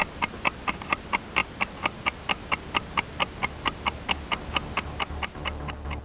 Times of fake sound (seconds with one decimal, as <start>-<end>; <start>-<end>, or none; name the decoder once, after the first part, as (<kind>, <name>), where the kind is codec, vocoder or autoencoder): none